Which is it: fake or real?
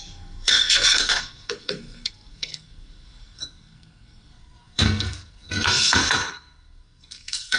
fake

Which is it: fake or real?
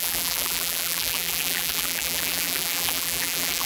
fake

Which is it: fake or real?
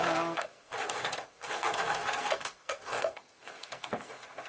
fake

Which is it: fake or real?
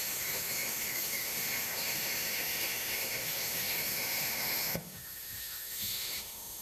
fake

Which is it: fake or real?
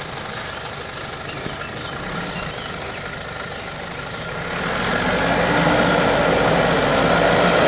real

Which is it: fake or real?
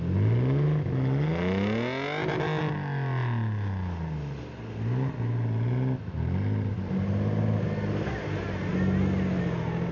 real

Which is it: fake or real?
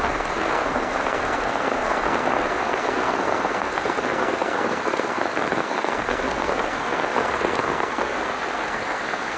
fake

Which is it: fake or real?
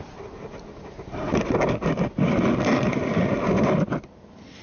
real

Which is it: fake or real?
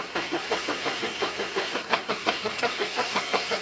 fake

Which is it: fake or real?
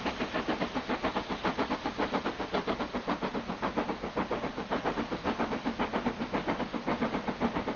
real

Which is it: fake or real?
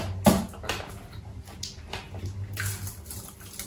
real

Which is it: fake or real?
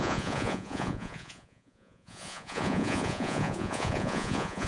fake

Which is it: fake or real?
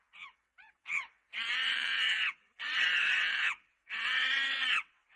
fake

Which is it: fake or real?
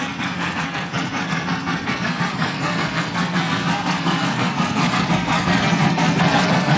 fake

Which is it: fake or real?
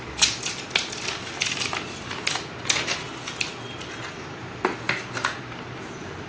real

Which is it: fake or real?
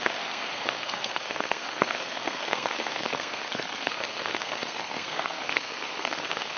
fake